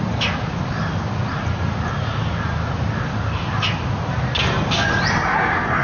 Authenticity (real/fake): real